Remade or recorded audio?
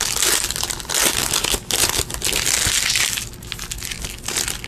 recorded